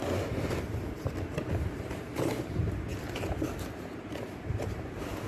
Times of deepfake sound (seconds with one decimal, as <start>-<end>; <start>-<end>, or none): 1.5-2.9; 3.9-5.3